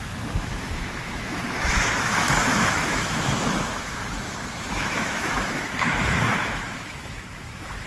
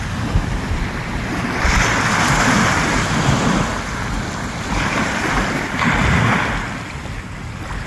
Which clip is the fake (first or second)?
first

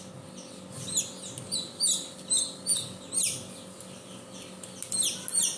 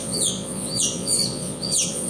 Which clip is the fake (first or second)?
second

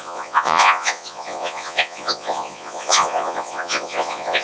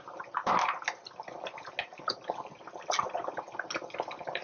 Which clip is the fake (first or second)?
first